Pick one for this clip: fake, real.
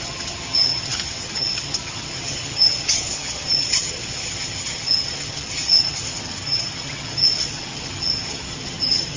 fake